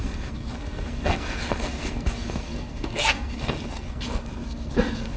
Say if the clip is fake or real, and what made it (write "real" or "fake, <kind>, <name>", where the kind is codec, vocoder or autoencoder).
fake, codec, SNAC